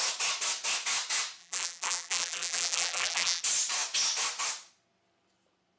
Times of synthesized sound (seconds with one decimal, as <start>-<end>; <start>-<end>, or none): 1.4-3.4